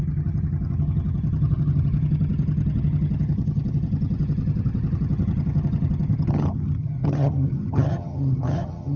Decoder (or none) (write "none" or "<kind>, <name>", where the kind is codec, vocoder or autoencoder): vocoder, HiFi-GAN